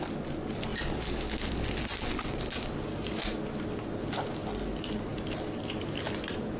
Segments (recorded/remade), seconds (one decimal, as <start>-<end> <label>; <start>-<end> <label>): 0.0-6.6 recorded